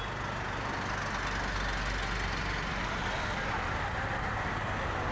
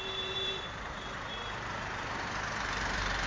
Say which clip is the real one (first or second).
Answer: first